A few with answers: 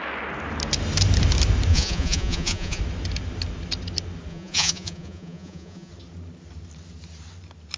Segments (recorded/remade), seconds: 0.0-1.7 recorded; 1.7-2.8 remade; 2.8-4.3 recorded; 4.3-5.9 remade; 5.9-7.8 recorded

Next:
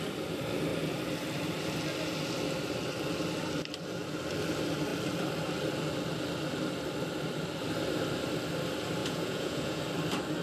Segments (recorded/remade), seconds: 0.0-9.0 recorded; 9.0-9.8 remade; 9.8-10.4 recorded

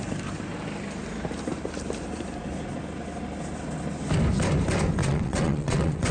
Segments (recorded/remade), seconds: 0.0-5.0 recorded; 5.0-6.1 remade

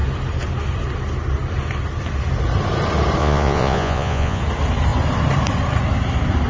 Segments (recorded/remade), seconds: 0.0-3.2 recorded; 3.2-4.4 remade; 4.4-6.5 recorded